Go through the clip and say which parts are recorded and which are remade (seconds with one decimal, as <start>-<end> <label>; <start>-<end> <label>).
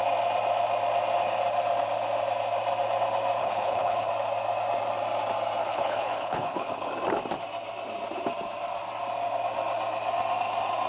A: 0.0-3.4 recorded; 3.4-4.1 remade; 4.1-5.6 recorded; 5.6-6.9 remade; 6.9-10.9 recorded